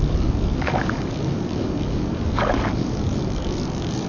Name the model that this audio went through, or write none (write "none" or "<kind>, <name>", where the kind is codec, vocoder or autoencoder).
codec, DAC